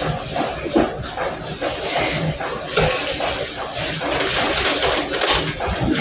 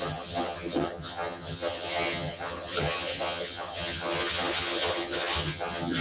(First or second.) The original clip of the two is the first